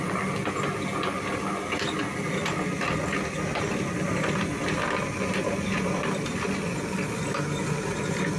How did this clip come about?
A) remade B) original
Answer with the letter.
A